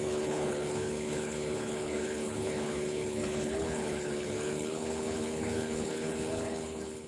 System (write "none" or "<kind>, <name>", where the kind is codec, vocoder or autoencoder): codec, HILCodec